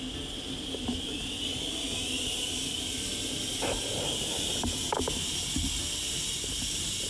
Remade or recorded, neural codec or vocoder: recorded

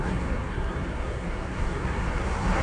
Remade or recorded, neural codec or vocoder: remade, codec, SNAC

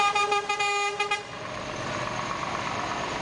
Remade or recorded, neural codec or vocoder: recorded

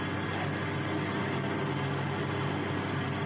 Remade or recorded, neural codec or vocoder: recorded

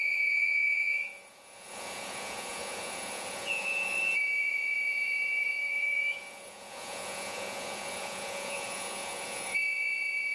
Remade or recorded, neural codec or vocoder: remade, vocoder, Vocos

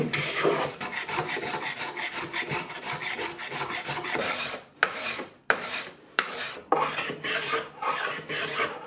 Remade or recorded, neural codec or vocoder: remade, vocoder, BigVGAN v2